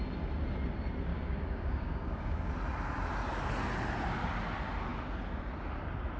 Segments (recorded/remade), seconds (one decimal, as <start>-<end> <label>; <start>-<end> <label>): 0.0-1.1 recorded; 1.1-2.5 remade; 2.5-6.2 recorded